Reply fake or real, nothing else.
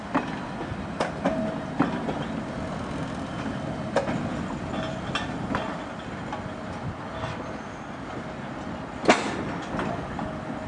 real